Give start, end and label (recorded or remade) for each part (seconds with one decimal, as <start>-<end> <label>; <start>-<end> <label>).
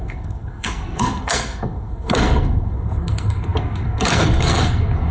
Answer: 0.0-5.1 remade